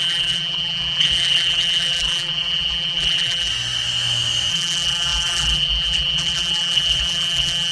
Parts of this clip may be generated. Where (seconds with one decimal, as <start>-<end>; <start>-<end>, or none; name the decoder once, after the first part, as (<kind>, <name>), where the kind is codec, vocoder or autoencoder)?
0.0-3.5 (vocoder, BigVGAN v2); 4.5-7.7